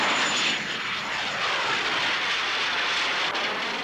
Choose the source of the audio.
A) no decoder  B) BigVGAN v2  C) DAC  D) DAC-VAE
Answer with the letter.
A